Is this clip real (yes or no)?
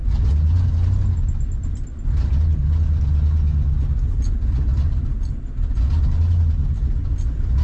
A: yes